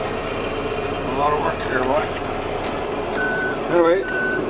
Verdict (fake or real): fake